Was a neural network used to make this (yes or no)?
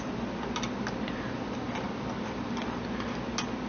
no